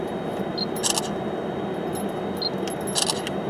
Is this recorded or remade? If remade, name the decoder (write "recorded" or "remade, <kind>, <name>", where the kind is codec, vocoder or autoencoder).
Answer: recorded